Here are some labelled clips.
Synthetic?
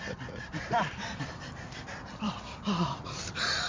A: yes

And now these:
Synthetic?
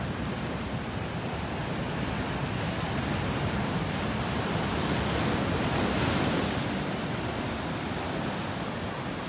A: no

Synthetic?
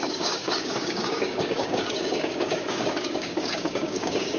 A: yes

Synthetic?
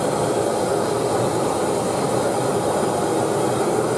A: no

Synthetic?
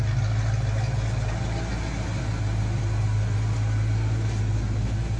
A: no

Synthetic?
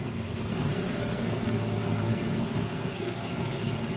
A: yes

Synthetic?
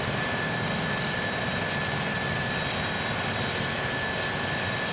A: no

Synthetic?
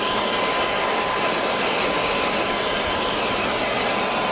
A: no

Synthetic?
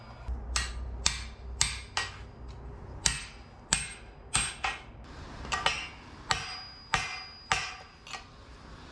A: no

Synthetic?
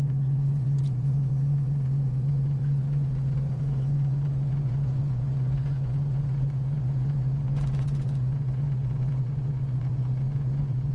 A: yes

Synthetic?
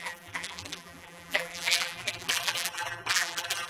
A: yes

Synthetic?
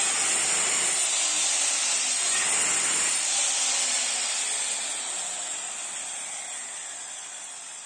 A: no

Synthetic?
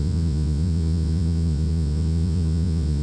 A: yes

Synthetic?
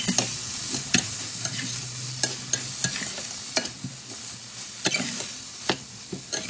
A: no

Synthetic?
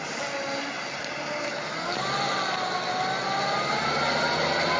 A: no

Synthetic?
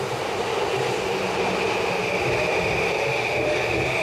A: no